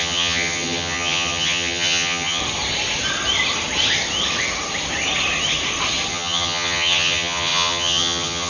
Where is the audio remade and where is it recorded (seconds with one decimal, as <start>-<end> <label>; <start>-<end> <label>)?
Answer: 0.0-2.4 remade; 2.4-6.1 recorded; 6.1-8.5 remade